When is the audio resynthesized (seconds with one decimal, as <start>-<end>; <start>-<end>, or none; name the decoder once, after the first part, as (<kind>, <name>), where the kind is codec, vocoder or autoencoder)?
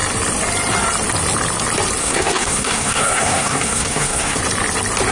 2.0-4.4 (codec, SNAC)